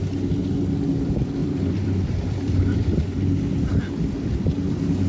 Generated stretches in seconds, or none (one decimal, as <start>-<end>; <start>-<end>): 1.4-4.5